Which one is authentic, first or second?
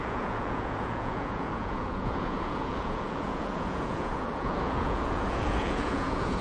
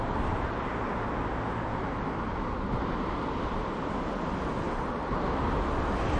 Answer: second